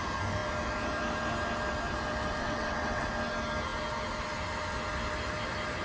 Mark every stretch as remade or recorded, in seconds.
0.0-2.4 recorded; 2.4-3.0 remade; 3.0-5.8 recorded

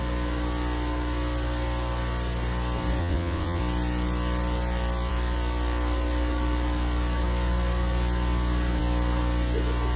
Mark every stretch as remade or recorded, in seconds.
0.0-3.0 recorded; 3.0-3.6 remade; 3.6-10.0 recorded

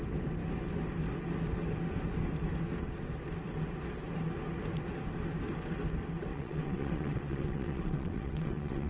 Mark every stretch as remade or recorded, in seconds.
0.0-6.3 recorded; 6.3-8.9 remade